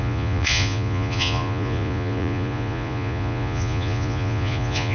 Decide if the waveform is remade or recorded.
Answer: remade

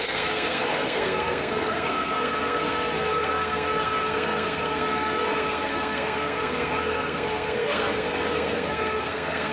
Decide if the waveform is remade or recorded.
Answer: remade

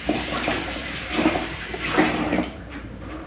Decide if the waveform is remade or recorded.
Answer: remade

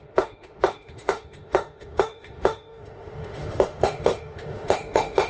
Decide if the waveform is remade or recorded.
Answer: remade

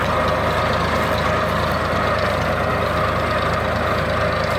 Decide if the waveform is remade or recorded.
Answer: remade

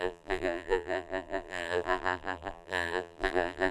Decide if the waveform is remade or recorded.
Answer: remade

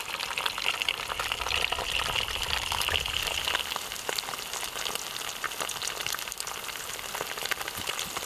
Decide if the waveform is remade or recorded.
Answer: recorded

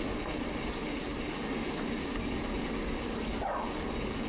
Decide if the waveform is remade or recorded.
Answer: recorded